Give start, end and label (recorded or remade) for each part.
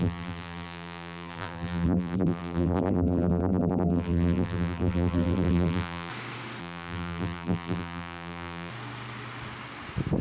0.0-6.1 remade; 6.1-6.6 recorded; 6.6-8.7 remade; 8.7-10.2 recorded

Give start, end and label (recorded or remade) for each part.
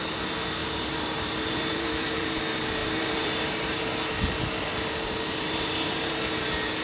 0.0-0.6 recorded; 0.6-2.4 remade; 2.4-2.8 recorded; 2.8-3.8 remade; 3.8-4.7 recorded; 4.7-6.2 remade; 6.2-6.8 recorded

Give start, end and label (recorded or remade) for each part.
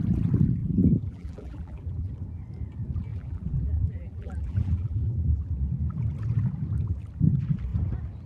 0.0-0.6 recorded; 0.6-2.1 remade; 2.1-3.1 recorded; 3.1-5.4 remade; 5.4-8.3 recorded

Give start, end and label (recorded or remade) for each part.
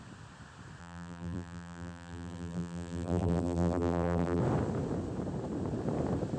0.0-0.8 recorded; 0.8-4.4 remade; 4.4-6.4 recorded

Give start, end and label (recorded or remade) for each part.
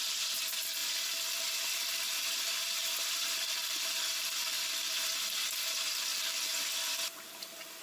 0.0-0.8 recorded; 0.8-5.5 remade; 5.5-6.1 recorded; 6.1-7.8 remade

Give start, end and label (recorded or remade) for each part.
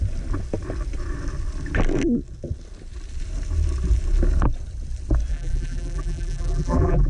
0.0-5.3 recorded; 5.3-7.1 remade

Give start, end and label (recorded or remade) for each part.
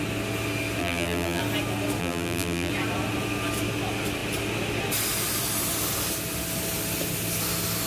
0.0-0.8 recorded; 0.8-1.4 remade; 1.4-2.0 recorded; 2.0-2.7 remade; 2.7-7.9 recorded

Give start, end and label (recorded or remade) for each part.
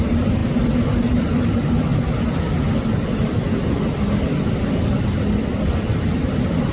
0.0-0.4 remade; 0.4-1.1 recorded; 1.1-1.9 remade; 1.9-5.9 recorded; 5.9-6.7 remade